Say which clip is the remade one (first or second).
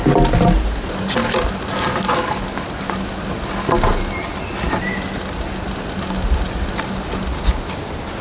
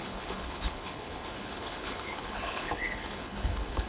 second